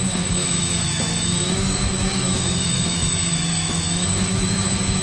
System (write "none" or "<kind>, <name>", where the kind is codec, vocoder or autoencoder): autoencoder, DAC-VAE